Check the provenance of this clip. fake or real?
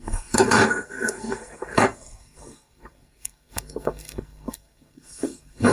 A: fake